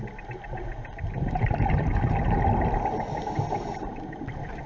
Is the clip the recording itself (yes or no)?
yes